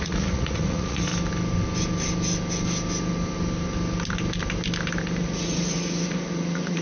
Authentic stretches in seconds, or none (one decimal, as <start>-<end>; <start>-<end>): 1.1-5.2